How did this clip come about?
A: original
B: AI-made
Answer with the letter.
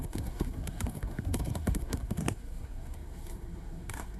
B